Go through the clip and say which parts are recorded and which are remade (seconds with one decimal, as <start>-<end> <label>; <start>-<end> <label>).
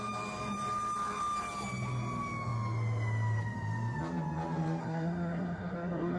0.0-4.8 recorded; 4.8-6.2 remade